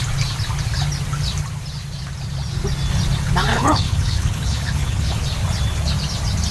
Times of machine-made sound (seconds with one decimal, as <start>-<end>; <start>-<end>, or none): 3.5-5.2